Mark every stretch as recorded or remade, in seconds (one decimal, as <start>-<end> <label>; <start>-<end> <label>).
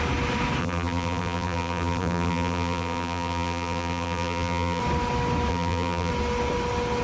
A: 0.0-0.6 recorded; 0.6-4.8 remade; 4.8-5.5 recorded; 5.5-6.1 remade; 6.1-7.0 recorded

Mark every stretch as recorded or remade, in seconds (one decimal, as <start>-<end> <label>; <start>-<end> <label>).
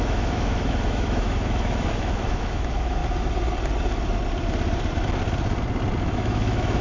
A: 0.0-3.0 remade; 3.0-6.0 recorded; 6.0-6.8 remade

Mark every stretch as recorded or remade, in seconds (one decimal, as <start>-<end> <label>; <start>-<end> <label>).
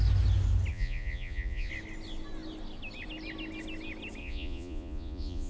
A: 0.0-0.7 recorded; 0.7-1.7 remade; 1.7-4.2 recorded; 4.2-5.5 remade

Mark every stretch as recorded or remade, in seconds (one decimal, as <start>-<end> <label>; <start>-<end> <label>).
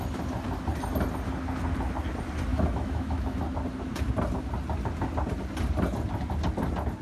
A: 0.0-2.5 recorded; 2.5-3.4 remade; 3.4-7.0 recorded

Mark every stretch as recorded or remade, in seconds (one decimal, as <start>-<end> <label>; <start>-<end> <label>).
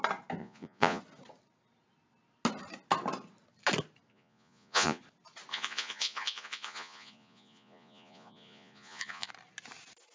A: 0.0-0.4 recorded; 0.4-1.0 remade; 1.0-4.1 recorded; 4.1-5.0 remade; 5.0-5.5 recorded; 5.5-9.3 remade; 9.3-10.1 recorded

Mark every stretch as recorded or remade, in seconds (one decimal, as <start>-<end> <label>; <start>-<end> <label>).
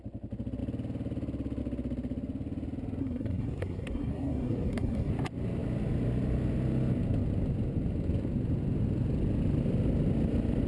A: 0.0-3.0 recorded; 3.0-5.1 remade; 5.1-10.7 recorded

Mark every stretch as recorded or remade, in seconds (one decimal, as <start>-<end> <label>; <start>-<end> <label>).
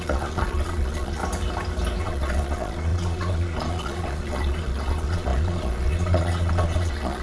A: 0.0-1.2 remade; 1.2-2.0 recorded; 2.0-7.2 remade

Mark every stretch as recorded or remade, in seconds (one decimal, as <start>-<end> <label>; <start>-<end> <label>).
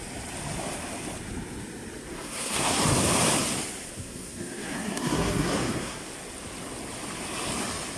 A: 0.0-2.1 recorded; 2.1-2.8 remade; 2.8-4.0 recorded; 4.0-6.0 remade; 6.0-8.0 recorded